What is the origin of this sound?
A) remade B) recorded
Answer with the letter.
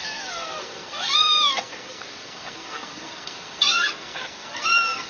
A